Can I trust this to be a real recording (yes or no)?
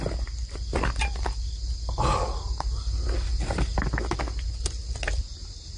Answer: yes